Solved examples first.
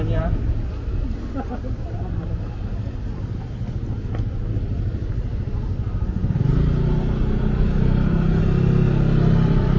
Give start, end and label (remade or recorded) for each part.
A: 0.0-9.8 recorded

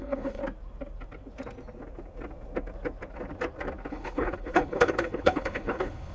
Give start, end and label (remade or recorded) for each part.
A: 0.0-0.4 remade; 0.4-3.9 recorded; 3.9-6.1 remade

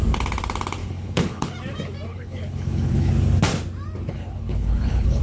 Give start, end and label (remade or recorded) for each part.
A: 0.0-0.8 recorded; 0.8-1.5 remade; 1.5-2.1 recorded; 2.1-3.1 remade; 3.1-4.1 recorded; 4.1-5.2 remade

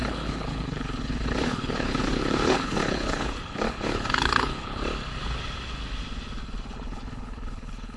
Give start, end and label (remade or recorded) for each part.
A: 0.0-4.8 remade; 4.8-6.7 recorded; 6.7-8.0 remade

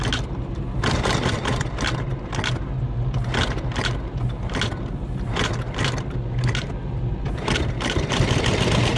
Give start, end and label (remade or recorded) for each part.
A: 0.0-9.0 recorded

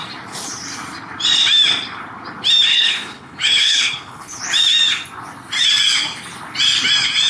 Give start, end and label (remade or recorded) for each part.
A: 0.0-2.7 recorded; 2.7-4.4 remade; 4.4-7.3 recorded

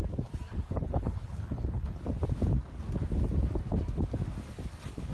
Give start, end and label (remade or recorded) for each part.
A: 0.0-0.5 recorded; 0.5-2.0 remade; 2.0-5.1 recorded